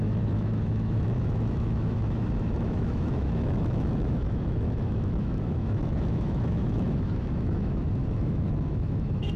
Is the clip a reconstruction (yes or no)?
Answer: yes